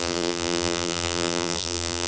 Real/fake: fake